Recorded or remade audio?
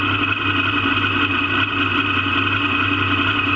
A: recorded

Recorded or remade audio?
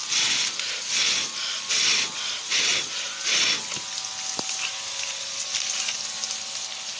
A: recorded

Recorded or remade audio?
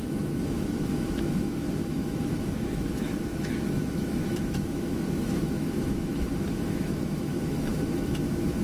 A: remade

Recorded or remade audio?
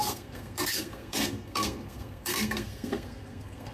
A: remade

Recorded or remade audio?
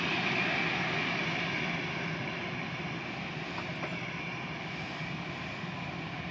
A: recorded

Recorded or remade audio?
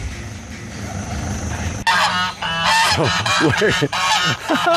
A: recorded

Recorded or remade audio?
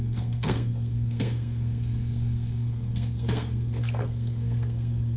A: remade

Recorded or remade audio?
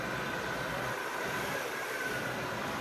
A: remade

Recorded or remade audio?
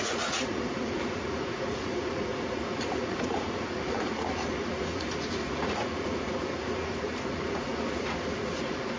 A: remade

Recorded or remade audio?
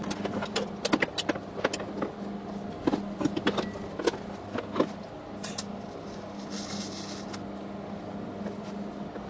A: recorded